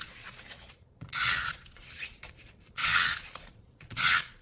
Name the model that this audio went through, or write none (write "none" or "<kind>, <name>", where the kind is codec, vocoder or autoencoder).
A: vocoder, Vocos